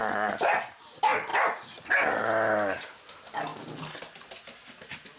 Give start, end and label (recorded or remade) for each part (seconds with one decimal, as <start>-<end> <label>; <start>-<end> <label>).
0.0-5.2 recorded